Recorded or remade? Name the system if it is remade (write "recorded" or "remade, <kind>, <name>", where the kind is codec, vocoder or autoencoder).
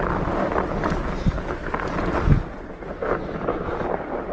recorded